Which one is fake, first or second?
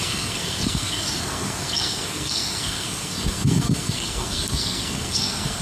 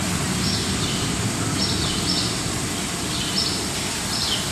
first